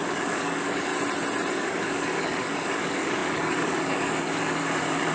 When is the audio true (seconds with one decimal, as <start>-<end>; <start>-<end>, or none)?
0.9-1.5